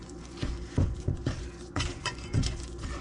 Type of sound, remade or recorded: remade